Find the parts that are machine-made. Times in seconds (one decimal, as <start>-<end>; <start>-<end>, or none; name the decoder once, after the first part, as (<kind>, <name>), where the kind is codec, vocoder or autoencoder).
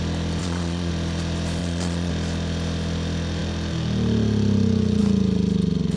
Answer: 0.4-0.9 (vocoder, Vocos); 1.6-2.1